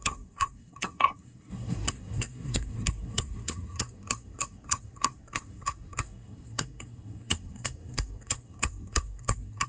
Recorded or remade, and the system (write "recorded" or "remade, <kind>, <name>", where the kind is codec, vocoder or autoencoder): remade, codec, SNAC